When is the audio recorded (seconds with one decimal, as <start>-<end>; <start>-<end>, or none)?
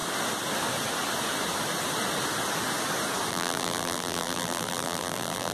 0.0-3.3